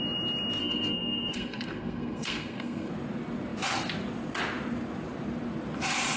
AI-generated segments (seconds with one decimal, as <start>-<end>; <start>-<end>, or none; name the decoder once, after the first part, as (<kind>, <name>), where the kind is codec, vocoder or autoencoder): 0.6-2.9 (codec, SNAC)